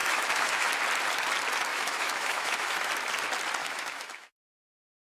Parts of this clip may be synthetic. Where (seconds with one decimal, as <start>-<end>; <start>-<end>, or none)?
0.0-0.7; 1.7-2.9; 3.6-4.4